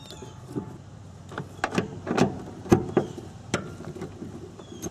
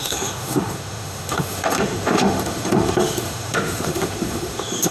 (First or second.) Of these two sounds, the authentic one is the first